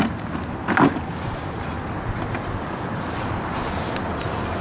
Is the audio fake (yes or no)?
no